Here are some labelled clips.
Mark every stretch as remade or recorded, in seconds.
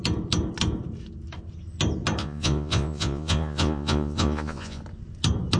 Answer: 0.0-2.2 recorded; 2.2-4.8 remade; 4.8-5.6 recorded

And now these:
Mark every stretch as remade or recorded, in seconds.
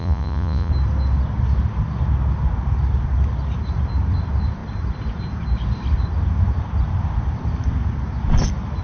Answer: 0.0-0.7 remade; 0.7-8.8 recorded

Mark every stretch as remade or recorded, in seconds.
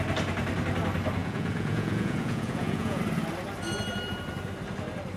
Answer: 0.0-1.2 recorded; 1.2-3.0 remade; 3.0-5.2 recorded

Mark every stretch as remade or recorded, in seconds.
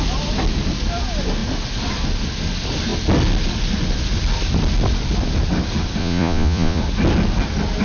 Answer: 0.0-6.0 recorded; 6.0-6.8 remade; 6.8-7.8 recorded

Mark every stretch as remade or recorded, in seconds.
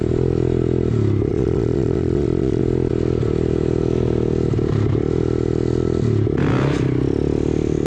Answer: 0.0-1.3 recorded; 1.3-2.6 remade; 2.6-7.9 recorded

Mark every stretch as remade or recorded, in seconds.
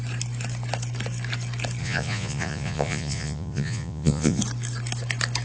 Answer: 0.0-1.8 recorded; 1.8-4.4 remade; 4.4-5.4 recorded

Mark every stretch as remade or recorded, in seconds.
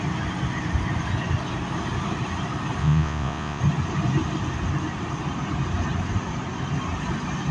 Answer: 0.0-2.8 recorded; 2.8-3.6 remade; 3.6-7.5 recorded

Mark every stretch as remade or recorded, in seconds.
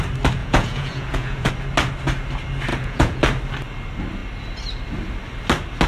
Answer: 0.0-0.4 recorded; 0.4-1.5 remade; 1.5-2.7 recorded; 2.7-3.2 remade; 3.2-5.9 recorded